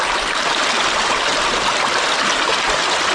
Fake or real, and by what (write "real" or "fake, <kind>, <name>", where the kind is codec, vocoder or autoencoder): real